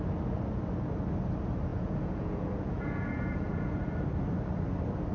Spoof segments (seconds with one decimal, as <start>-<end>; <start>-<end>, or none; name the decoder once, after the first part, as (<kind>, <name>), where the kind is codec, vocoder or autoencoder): 1.7-3.8 (vocoder, Vocos)